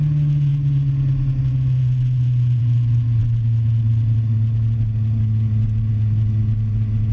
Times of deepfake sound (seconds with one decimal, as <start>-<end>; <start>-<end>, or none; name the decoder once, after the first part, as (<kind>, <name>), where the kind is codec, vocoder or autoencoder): none